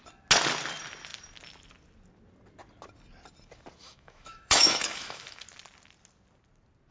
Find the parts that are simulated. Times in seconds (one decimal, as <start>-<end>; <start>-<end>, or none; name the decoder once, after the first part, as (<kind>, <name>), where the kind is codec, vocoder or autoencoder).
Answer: 3.8-5.4 (autoencoder, DAC-VAE)